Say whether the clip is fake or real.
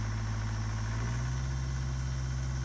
real